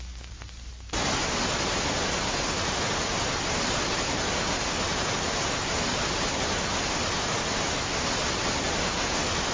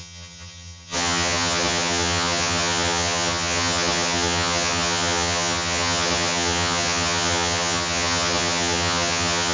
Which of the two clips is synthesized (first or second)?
second